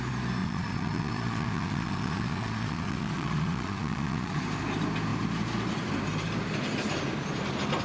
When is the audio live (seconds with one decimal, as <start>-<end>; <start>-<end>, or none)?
0.0-0.4; 4.4-7.8